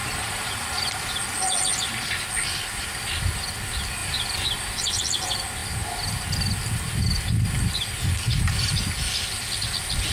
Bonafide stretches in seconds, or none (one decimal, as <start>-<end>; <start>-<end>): 1.2-4.0; 5.0-10.1